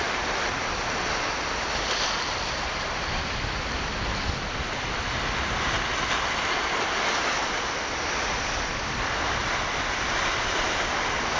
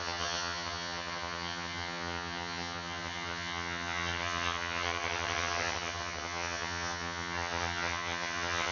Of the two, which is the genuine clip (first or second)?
first